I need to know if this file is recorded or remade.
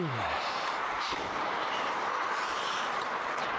remade